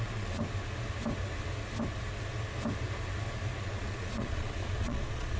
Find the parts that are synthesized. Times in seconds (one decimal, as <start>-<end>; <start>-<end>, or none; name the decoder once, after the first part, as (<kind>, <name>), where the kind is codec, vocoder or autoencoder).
0.0-0.4 (vocoder, Vocos); 3.6-5.4